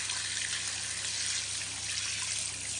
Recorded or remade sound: recorded